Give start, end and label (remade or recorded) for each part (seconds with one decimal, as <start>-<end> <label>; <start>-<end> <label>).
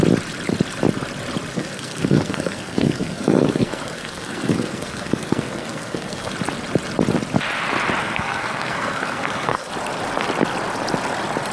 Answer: 0.0-1.5 recorded; 1.5-6.3 remade; 6.3-8.0 recorded; 8.0-9.7 remade; 9.7-11.5 recorded